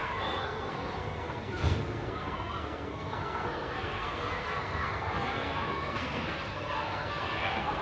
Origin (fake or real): fake